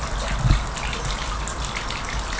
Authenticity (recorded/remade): recorded